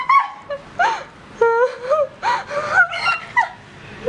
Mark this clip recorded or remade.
recorded